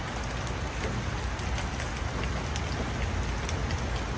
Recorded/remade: recorded